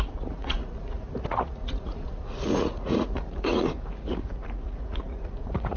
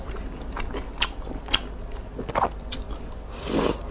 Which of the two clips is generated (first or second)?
first